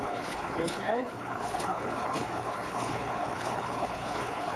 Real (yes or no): no